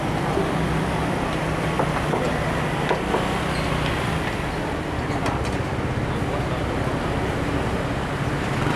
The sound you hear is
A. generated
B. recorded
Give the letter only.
B